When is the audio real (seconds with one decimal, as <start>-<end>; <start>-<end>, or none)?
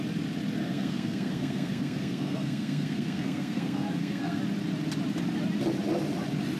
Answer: 0.0-0.6; 4.4-6.6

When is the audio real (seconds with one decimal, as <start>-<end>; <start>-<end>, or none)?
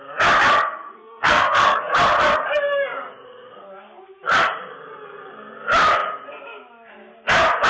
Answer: 0.0-0.8; 1.8-7.7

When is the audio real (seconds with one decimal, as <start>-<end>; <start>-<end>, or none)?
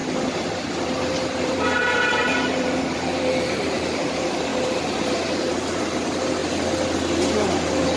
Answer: 0.0-0.7; 6.4-7.3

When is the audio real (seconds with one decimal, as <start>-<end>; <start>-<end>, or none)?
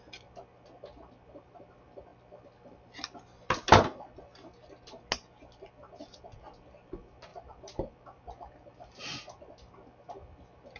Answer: 0.0-7.3; 9.0-10.8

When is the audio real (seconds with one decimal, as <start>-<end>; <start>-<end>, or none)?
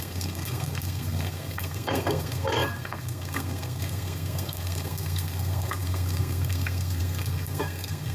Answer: none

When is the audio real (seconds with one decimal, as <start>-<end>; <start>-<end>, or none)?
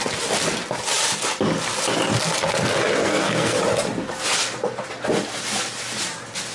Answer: 0.0-3.0; 3.6-6.5